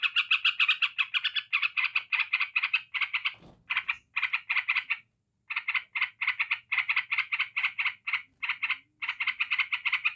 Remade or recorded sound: recorded